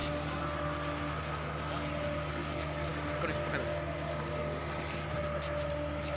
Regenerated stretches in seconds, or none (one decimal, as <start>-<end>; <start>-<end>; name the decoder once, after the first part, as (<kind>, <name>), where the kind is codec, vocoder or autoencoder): 2.3-2.9 (codec, DAC)

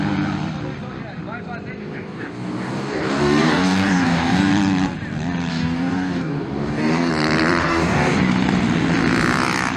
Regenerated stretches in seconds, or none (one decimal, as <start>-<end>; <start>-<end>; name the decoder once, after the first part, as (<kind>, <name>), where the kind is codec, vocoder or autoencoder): 1.8-4.5 (codec, DAC); 5.5-7.1; 7.6-8.2

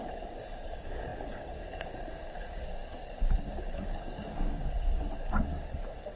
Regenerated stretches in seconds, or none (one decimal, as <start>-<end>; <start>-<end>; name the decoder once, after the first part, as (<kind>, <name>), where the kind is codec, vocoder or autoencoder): 0.0-6.2 (codec, DAC)

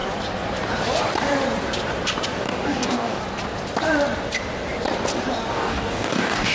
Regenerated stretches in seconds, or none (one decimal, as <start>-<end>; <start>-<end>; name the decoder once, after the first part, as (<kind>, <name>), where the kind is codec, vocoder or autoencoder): 2.4-3.2 (codec, DAC); 5.5-6.5

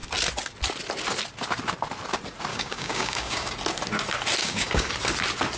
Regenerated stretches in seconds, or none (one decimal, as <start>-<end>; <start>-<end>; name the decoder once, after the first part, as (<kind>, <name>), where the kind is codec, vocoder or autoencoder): 2.5-3.5 (codec, DAC); 4.4-4.9

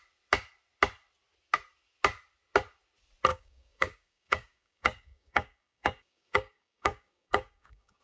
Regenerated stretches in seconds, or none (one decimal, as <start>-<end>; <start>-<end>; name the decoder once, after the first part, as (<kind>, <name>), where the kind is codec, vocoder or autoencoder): 3.3-8.0 (codec, DAC)